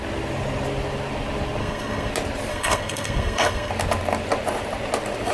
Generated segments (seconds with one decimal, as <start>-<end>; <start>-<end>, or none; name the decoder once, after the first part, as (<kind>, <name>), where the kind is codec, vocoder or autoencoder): 1.6-2.1 (codec, SNAC); 2.5-3.7